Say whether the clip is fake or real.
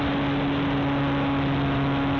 real